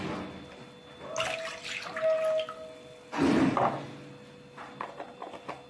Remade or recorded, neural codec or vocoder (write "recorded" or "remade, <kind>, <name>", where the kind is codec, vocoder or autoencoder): recorded